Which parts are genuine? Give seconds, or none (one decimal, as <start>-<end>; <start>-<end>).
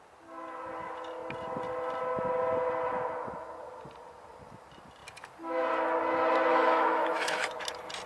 0.0-6.5; 7.5-8.1